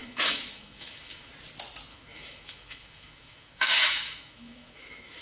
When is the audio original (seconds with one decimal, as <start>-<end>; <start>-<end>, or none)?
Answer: 1.3-1.9